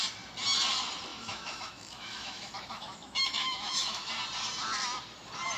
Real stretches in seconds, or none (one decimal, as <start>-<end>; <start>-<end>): 0.0-1.1; 4.1-5.6